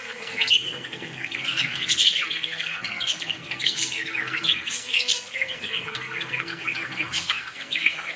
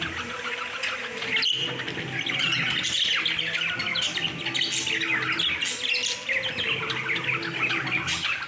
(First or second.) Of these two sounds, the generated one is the first